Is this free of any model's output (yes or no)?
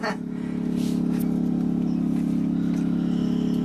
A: yes